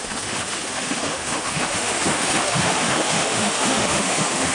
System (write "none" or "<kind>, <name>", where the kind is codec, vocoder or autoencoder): autoencoder, DAC-VAE